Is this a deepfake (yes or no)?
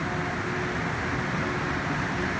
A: no